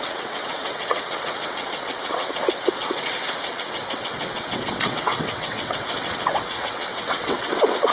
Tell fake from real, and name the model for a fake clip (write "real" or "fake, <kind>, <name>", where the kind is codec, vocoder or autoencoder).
fake, vocoder, WaveNeXt